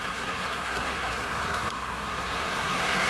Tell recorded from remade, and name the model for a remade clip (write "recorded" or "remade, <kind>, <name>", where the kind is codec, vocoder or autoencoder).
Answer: remade, codec, SNAC